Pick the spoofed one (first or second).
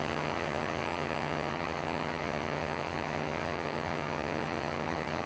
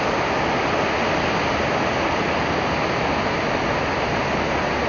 first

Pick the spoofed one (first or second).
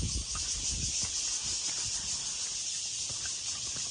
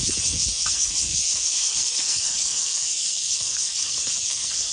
second